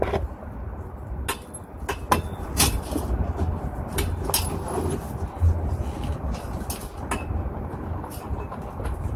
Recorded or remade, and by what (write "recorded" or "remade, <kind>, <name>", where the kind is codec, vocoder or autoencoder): recorded